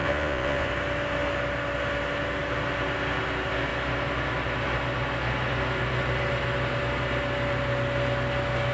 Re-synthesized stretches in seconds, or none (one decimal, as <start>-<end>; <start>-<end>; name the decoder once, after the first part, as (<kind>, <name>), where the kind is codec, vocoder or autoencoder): 0.0-0.7 (vocoder, Vocos)